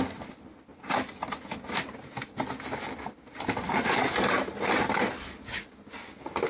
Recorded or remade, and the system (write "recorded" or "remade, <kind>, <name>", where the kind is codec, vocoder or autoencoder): recorded